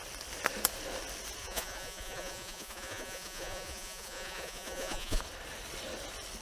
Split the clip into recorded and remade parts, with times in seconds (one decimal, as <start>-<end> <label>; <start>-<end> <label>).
0.0-1.4 recorded; 1.4-5.2 remade; 5.2-6.4 recorded